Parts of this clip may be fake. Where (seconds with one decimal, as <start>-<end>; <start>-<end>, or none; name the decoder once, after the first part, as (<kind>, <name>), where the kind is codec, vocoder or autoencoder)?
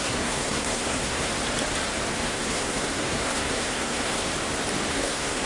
0.0-1.3 (codec, SNAC); 2.1-4.3; 4.9-5.5